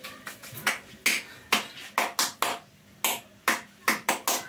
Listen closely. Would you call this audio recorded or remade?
recorded